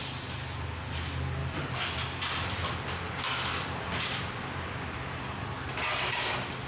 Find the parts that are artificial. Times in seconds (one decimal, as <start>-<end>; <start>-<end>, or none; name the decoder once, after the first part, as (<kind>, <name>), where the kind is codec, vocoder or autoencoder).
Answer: 1.4-5.4 (vocoder, BigVGAN v2)